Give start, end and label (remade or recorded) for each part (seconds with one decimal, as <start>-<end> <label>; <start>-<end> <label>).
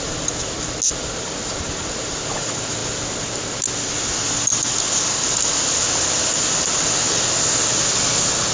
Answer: 0.0-8.5 recorded